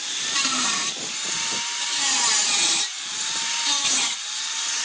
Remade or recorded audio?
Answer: remade